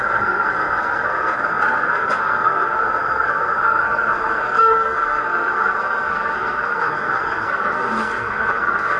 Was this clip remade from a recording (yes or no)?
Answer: yes